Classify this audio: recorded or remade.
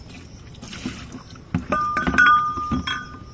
recorded